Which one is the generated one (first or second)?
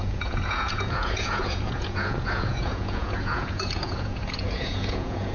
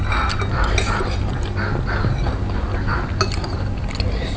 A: first